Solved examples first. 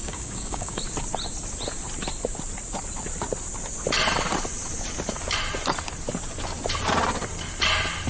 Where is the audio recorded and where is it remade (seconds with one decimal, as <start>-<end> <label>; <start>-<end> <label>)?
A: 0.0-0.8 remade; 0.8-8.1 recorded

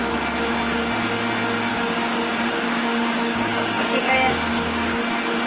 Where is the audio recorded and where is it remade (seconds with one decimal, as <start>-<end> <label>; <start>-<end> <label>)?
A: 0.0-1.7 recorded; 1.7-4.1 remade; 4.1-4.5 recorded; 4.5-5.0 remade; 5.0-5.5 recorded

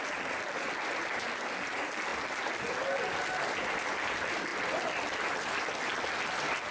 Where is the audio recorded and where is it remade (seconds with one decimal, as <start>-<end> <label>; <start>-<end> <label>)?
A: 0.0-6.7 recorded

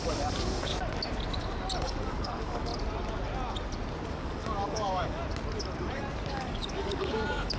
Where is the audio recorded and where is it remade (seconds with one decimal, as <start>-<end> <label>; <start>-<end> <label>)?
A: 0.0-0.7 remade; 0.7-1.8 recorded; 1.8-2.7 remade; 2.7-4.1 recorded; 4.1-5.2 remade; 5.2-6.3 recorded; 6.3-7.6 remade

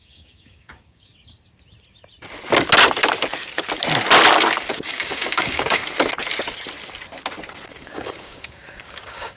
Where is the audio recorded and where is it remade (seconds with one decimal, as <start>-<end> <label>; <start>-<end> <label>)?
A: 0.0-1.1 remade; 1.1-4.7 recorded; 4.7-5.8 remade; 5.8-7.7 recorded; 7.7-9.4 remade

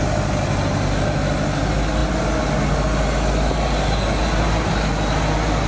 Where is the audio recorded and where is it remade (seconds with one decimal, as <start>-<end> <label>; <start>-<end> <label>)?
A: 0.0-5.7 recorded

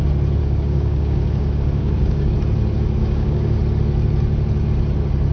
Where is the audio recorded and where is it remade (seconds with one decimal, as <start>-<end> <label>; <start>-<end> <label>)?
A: 0.0-0.4 recorded; 0.4-2.3 remade; 2.3-3.0 recorded; 3.0-3.6 remade; 3.6-5.3 recorded

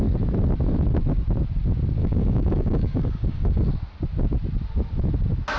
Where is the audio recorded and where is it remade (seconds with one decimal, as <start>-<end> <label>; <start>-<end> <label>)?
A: 0.0-2.0 recorded; 2.0-3.7 remade; 3.7-5.6 recorded